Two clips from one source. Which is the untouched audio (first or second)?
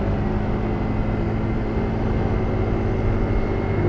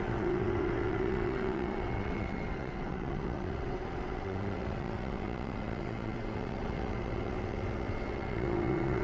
first